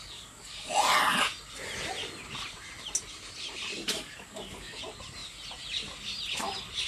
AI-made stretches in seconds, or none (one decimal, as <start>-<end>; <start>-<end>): 0.0-0.7; 3.7-4.8